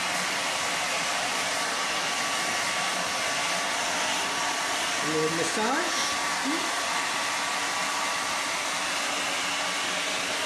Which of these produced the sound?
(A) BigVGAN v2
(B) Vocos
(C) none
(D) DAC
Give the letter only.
C